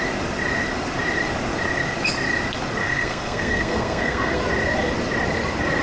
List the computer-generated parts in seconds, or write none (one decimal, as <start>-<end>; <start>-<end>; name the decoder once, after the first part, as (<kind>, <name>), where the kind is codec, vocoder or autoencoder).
2.8-4.4 (codec, SNAC)